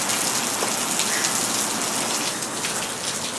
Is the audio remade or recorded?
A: recorded